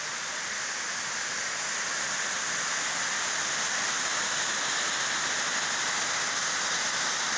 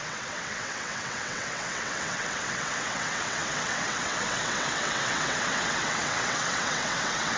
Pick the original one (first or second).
first